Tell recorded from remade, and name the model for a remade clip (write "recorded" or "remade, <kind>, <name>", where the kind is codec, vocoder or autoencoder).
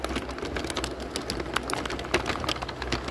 recorded